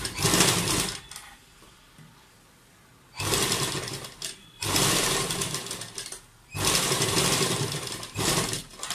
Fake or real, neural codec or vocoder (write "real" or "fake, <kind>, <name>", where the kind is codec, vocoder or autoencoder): fake, vocoder, BigVGAN v2